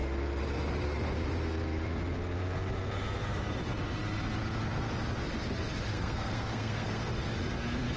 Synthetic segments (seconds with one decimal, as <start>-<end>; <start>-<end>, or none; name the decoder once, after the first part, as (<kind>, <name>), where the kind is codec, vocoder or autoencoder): 5.9-7.1 (codec, SNAC)